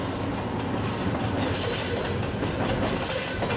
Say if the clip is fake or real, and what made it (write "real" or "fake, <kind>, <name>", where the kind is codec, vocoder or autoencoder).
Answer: real